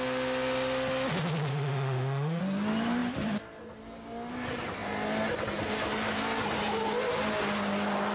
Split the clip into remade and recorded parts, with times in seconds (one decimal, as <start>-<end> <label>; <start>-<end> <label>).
0.0-1.5 recorded; 1.5-2.4 remade; 2.4-8.1 recorded